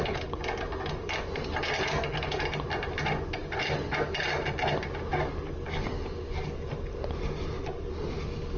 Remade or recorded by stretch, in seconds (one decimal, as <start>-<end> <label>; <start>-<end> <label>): 0.0-8.6 recorded